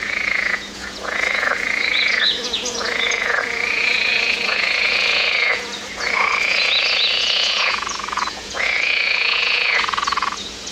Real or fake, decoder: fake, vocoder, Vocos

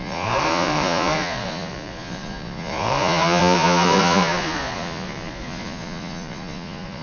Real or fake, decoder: fake, vocoder, Vocos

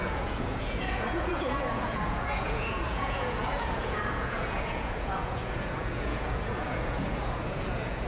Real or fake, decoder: fake, vocoder, Vocos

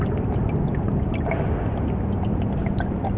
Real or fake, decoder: real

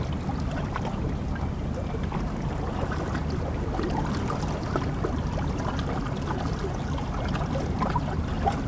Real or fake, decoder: real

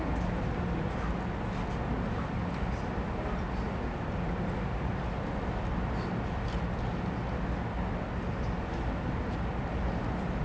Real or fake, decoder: real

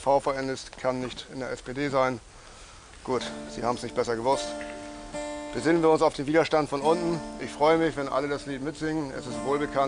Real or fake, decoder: real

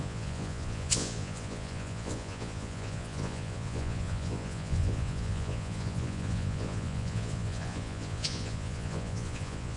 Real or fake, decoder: fake, vocoder, Vocos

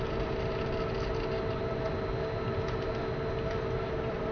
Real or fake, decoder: real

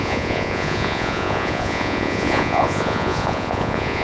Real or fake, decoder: fake, vocoder, Vocos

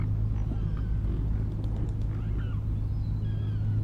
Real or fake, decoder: real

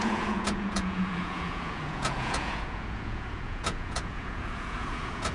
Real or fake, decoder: fake, vocoder, Vocos